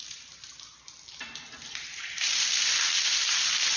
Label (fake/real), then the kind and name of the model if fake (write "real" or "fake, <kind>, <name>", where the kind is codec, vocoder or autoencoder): real